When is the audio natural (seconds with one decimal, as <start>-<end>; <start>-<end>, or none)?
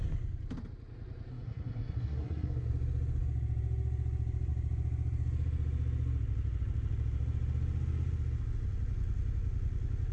0.0-1.3; 2.7-10.1